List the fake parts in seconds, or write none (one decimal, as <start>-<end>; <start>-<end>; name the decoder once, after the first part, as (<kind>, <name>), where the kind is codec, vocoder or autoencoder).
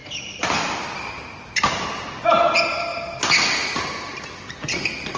none